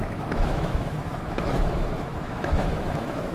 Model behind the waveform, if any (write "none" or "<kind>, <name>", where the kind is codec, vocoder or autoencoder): autoencoder, DAC-VAE